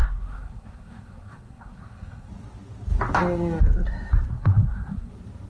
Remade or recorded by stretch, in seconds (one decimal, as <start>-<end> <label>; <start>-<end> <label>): 0.0-2.3 remade; 2.3-4.3 recorded; 4.3-5.1 remade; 5.1-5.5 recorded